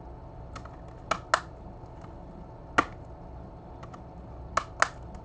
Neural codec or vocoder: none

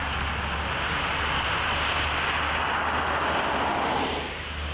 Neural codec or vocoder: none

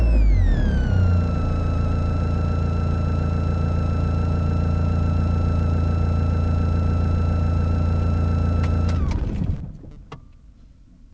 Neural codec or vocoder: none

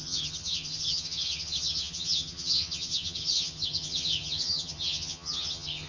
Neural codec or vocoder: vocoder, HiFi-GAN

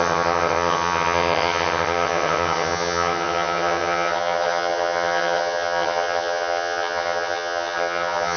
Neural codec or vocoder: vocoder, HiFi-GAN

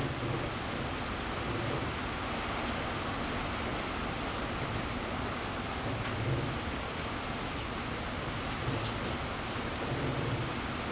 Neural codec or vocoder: none